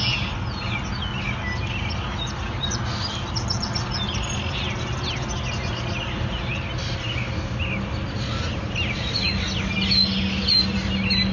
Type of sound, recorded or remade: recorded